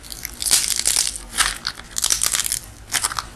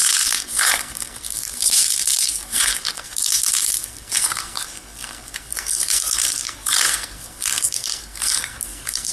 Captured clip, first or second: first